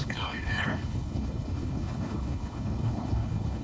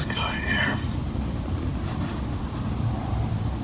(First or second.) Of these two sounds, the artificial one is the first